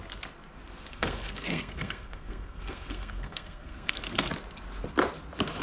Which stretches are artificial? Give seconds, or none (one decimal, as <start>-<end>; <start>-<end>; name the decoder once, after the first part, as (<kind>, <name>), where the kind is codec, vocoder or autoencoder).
0.9-4.3 (codec, SNAC)